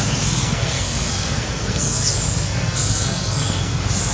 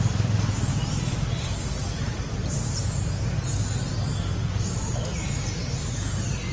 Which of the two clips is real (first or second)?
second